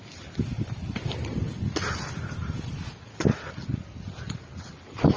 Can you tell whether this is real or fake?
real